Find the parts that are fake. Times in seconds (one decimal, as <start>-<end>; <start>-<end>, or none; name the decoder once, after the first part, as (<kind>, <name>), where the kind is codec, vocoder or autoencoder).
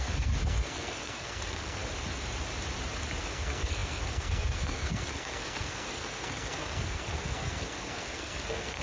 0.0-1.8 (codec, SNAC); 3.2-8.8